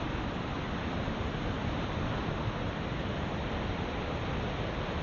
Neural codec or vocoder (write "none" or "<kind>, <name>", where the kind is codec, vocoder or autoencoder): none